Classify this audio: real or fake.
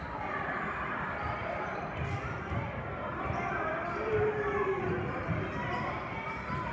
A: fake